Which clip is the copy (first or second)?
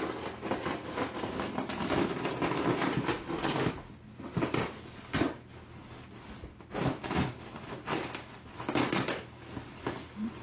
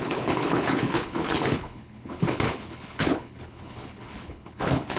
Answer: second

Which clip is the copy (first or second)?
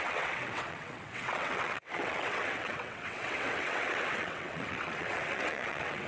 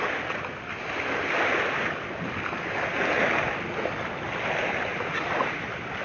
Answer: first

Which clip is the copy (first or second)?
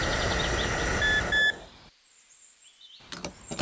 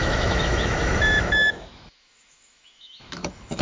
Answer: second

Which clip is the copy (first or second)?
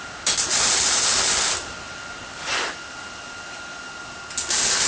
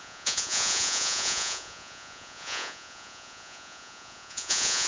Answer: second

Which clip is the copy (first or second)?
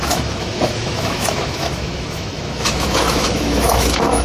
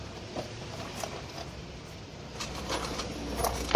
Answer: first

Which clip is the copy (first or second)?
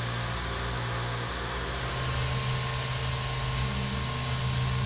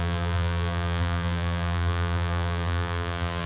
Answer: second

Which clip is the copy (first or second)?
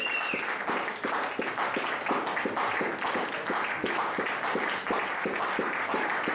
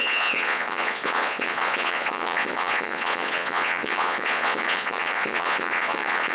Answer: second